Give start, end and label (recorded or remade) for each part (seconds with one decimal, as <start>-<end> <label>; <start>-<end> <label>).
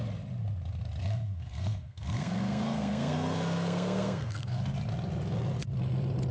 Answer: 0.0-1.0 recorded; 1.0-4.6 remade; 4.6-6.3 recorded